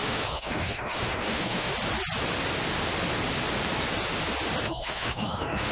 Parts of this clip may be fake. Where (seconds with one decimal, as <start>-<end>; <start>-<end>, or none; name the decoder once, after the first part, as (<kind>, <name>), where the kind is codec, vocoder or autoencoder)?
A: 0.0-1.7 (autoencoder, DAC-VAE); 4.6-5.7